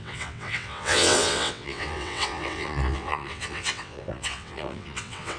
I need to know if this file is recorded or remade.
remade